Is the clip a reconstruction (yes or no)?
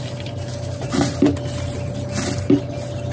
no